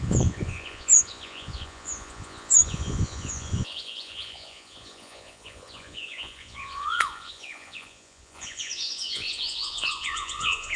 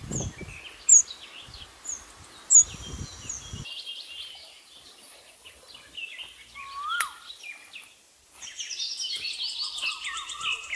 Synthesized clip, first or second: first